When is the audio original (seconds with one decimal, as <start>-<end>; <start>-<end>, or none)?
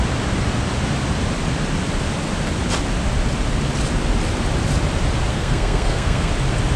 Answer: 0.0-5.3; 6.3-6.8